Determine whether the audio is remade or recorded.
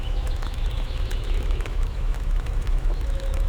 remade